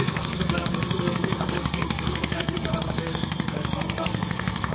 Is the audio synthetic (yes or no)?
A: yes